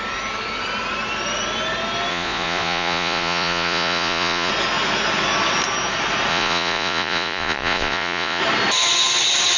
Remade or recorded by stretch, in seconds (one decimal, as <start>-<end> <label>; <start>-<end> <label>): 0.0-2.1 recorded; 2.1-4.5 remade; 4.5-6.3 recorded; 6.3-8.4 remade; 8.4-9.6 recorded